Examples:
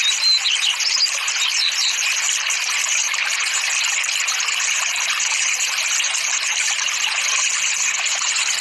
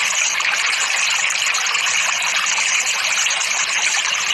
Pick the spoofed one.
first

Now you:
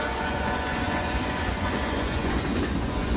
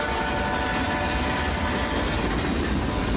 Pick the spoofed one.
first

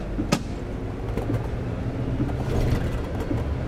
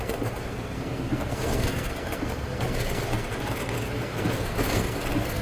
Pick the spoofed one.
second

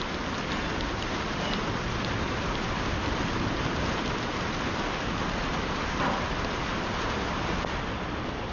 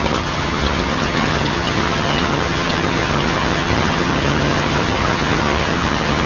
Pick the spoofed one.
second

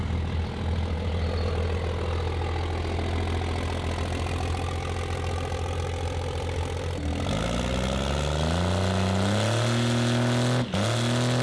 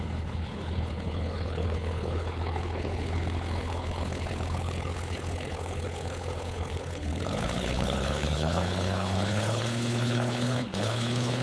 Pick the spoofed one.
second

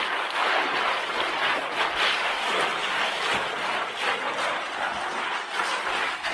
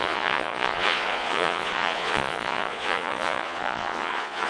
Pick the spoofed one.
second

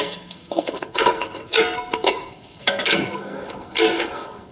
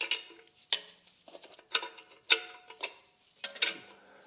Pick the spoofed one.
first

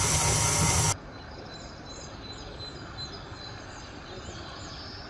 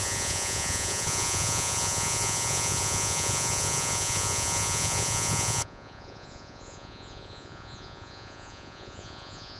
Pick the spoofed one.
second